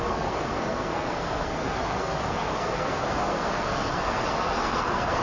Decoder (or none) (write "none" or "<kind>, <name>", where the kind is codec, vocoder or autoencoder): codec, SNAC